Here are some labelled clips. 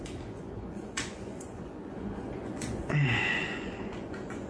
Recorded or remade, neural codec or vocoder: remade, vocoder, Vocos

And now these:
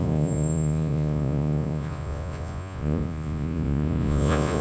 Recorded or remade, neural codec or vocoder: remade, vocoder, Vocos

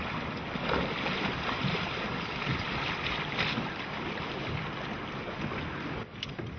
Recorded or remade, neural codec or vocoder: recorded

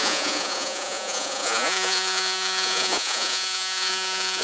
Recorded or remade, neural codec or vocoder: remade, vocoder, Vocos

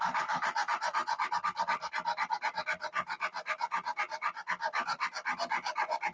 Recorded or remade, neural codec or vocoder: recorded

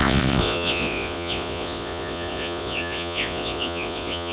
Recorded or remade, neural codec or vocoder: remade, vocoder, Vocos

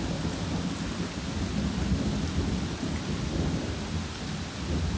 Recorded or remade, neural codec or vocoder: recorded